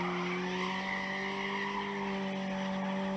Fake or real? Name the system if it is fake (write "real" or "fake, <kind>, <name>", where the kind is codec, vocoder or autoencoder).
real